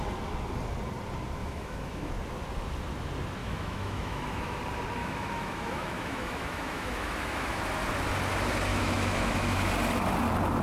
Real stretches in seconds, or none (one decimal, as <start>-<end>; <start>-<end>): 0.0-1.4; 2.1-3.4; 4.6-5.0; 7.6-8.7; 9.7-10.6